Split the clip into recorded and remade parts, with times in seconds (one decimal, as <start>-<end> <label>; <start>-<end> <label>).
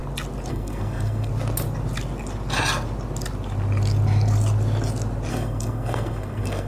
0.0-0.5 recorded; 0.5-1.3 remade; 1.3-5.3 recorded; 5.3-6.7 remade